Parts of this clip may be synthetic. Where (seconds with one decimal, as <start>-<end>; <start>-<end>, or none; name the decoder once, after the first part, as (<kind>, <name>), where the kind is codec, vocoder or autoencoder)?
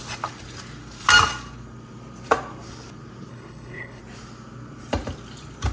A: 3.3-4.0 (codec, HILCodec)